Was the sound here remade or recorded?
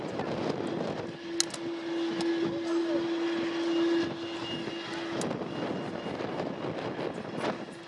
recorded